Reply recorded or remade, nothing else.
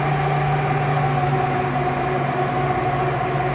recorded